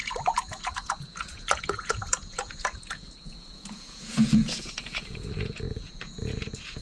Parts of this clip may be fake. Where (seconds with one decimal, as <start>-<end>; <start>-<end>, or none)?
0.0-6.8